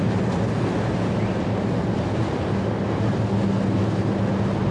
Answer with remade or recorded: recorded